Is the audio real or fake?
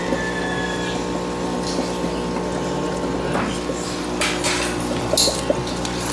real